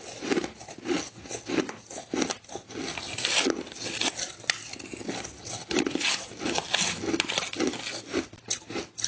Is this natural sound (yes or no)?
yes